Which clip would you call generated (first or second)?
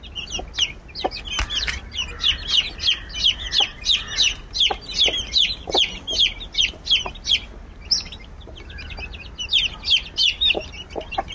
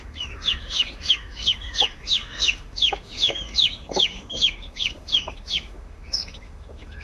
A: second